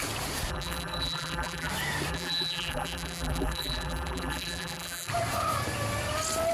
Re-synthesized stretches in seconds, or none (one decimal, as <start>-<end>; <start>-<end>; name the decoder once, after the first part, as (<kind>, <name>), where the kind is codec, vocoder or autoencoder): 0.5-1.7 (vocoder, BigVGAN v2); 2.1-5.1